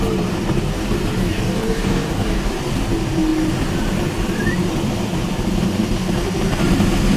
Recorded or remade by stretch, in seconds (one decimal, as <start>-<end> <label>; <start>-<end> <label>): 0.0-1.2 recorded; 1.2-2.5 remade; 2.5-7.2 recorded